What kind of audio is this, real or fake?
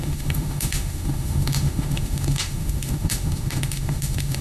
fake